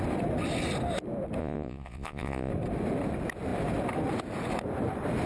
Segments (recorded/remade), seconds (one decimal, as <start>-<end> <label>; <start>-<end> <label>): 0.0-1.4 recorded; 1.4-2.5 remade; 2.5-5.3 recorded